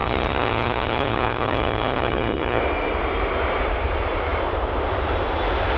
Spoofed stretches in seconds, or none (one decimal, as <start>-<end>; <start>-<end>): 0.0-2.6